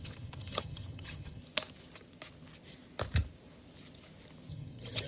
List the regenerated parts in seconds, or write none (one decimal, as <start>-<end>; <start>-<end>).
0.0-1.4; 4.5-5.1

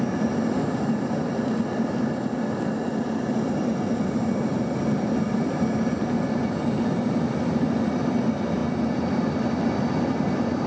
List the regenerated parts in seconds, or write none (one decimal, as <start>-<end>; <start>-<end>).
none